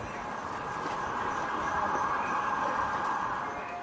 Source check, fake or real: real